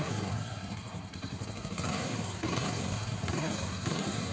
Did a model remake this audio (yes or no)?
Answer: yes